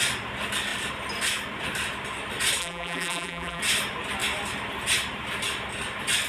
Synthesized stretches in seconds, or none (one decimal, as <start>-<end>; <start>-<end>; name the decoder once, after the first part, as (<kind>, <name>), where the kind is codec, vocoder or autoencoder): 2.6-3.6 (vocoder, BigVGAN v2)